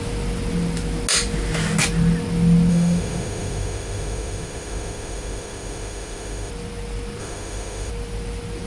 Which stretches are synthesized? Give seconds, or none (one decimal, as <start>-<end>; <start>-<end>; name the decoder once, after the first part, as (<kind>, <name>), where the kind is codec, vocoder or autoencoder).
2.7-6.5 (autoencoder, DAC-VAE); 7.2-7.9